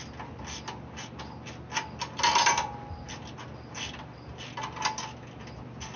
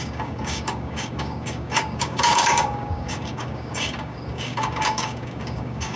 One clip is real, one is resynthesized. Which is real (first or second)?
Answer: first